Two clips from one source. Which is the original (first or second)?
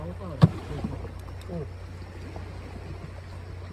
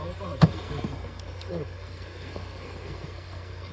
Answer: first